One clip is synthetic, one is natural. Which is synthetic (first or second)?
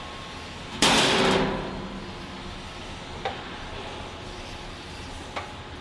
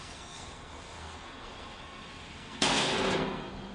second